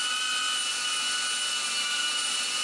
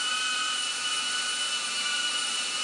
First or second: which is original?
first